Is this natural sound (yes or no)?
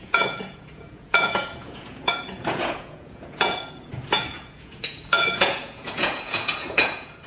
no